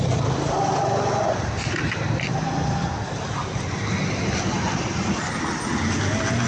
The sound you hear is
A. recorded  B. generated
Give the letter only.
A